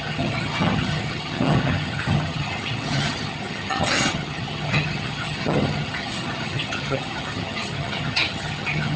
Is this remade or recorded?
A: remade